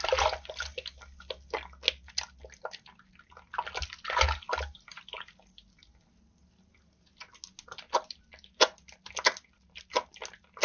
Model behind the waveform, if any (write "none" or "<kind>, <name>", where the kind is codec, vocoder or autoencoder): none